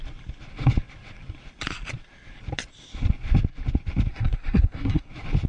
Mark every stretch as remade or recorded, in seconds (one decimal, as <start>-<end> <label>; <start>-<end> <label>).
0.0-4.1 recorded; 4.1-5.1 remade; 5.1-5.5 recorded